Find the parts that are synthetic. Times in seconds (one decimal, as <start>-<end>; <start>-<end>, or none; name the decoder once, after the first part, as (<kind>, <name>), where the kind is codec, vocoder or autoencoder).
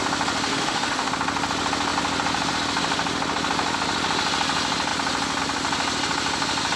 0.5-1.1 (autoencoder, DAC-VAE)